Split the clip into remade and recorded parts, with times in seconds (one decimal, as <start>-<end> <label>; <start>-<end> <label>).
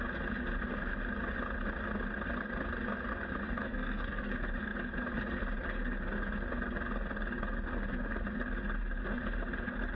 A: 0.0-3.6 recorded; 3.6-4.3 remade; 4.3-9.9 recorded